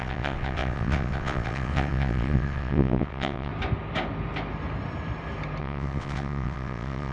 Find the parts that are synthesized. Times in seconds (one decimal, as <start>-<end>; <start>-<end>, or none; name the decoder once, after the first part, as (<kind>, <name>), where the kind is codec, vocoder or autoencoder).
0.0-3.5 (vocoder, WaveNeXt); 5.6-7.1